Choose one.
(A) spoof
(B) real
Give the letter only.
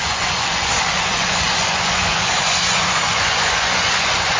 A